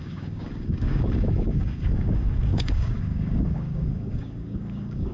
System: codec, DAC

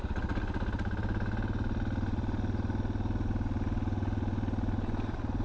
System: none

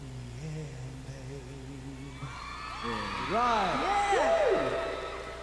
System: none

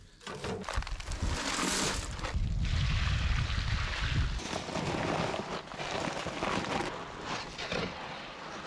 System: none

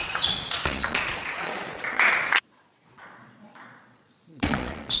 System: vocoder, Vocos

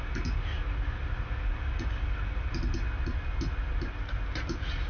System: none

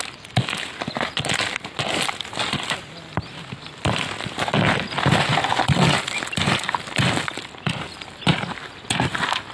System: none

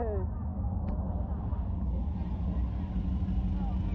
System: none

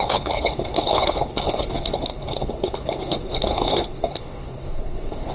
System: codec, HILCodec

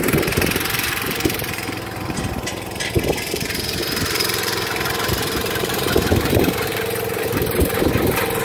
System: vocoder, BigVGAN v2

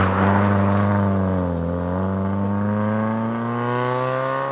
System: none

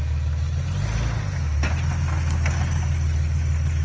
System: none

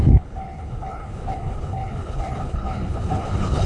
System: codec, HILCodec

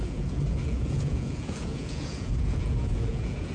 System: vocoder, Vocos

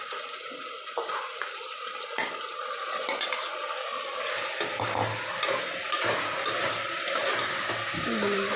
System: none